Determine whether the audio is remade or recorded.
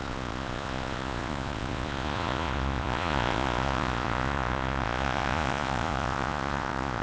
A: remade